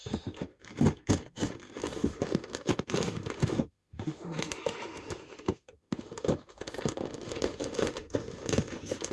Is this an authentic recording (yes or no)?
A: no